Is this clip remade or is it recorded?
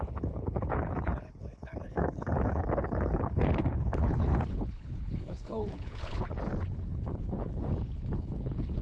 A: remade